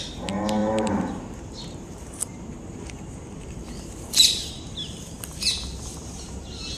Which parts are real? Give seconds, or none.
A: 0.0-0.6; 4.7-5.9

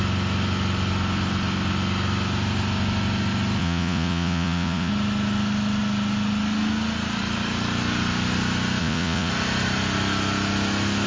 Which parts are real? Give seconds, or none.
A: 0.0-3.6; 4.9-8.8; 9.3-11.1

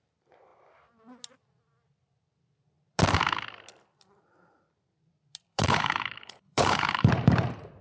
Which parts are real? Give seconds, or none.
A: 0.0-5.5; 7.1-7.8

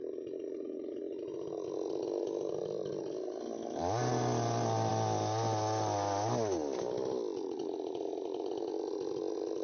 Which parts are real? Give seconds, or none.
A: 0.0-9.6

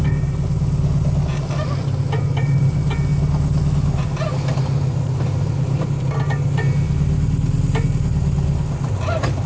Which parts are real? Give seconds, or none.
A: 0.0-9.5